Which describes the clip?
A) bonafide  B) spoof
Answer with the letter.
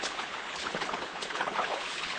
B